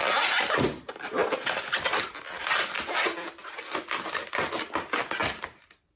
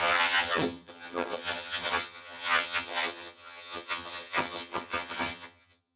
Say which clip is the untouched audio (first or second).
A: first